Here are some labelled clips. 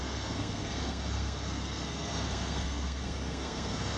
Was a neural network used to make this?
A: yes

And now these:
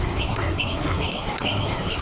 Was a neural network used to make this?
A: yes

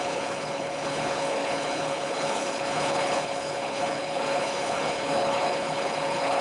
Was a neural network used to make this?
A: yes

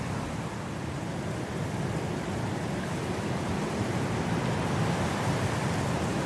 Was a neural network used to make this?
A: no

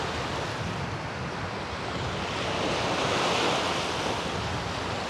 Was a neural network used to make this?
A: no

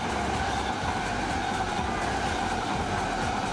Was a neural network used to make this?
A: no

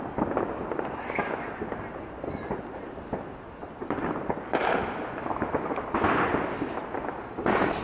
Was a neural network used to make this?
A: no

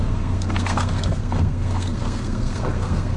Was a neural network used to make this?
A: yes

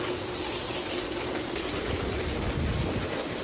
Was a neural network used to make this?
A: no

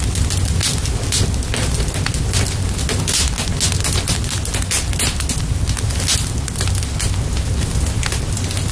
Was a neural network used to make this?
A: no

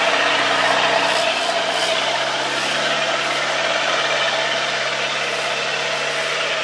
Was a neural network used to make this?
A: no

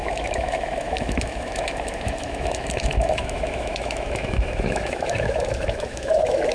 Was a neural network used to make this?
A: yes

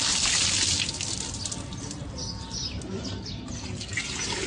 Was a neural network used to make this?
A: no